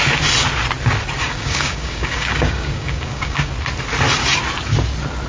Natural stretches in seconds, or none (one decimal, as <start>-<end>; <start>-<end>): 0.0-1.2; 3.5-5.3